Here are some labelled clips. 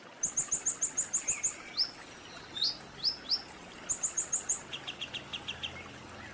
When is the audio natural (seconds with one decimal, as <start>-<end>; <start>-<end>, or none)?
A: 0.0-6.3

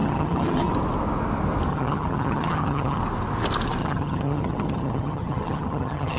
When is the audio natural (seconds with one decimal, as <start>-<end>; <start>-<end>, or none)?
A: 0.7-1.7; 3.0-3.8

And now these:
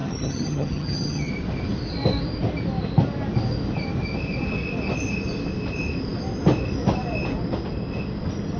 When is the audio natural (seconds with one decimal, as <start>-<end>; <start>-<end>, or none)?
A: 1.3-8.6

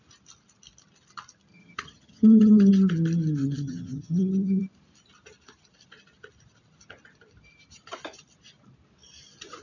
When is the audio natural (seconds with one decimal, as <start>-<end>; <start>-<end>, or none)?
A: 0.0-1.5; 2.7-3.4; 4.6-9.6

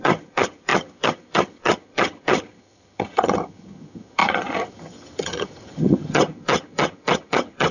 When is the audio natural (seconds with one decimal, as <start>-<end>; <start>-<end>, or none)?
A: none